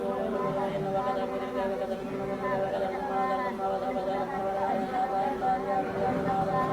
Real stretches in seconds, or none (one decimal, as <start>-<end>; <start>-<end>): 0.0-3.8; 5.0-6.7